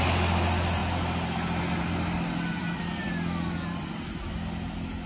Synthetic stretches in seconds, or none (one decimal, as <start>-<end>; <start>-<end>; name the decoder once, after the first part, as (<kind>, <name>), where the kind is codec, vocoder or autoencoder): none